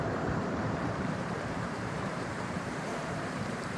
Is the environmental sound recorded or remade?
remade